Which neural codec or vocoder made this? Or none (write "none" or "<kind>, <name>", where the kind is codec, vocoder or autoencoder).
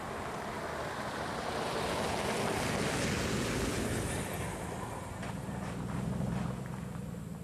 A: none